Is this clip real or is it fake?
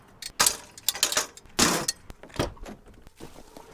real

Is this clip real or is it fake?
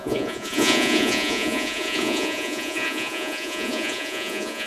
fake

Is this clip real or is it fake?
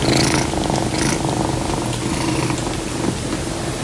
real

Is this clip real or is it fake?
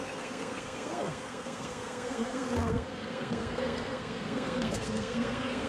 fake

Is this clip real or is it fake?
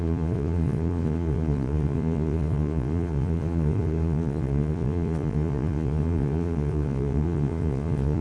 fake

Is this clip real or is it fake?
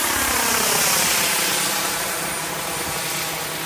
real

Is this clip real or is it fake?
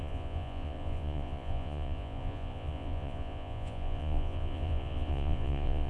fake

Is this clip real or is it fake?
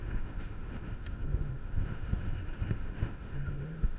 fake